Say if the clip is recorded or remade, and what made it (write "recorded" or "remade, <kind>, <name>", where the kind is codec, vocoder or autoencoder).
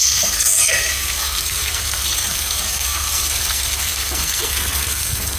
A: remade, codec, SNAC